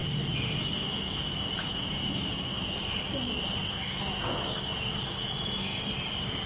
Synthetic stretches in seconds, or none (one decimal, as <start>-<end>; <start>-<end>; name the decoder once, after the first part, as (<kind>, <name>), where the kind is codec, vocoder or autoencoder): 0.6-2.8 (autoencoder, DAC-VAE); 3.9-5.7